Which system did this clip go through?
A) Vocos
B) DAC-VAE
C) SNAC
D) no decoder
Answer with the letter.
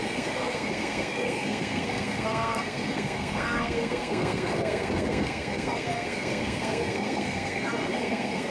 C